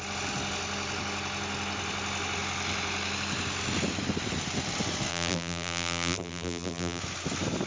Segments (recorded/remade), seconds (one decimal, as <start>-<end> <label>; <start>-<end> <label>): 0.0-5.1 recorded; 5.1-7.0 remade; 7.0-7.7 recorded